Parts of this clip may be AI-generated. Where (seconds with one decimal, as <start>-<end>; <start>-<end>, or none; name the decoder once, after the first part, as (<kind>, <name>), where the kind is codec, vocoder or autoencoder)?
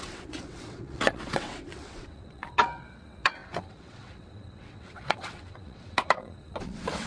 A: 0.0-7.1 (vocoder, WaveNeXt)